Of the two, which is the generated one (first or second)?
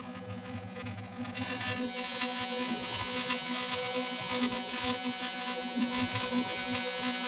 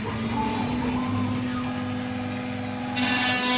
first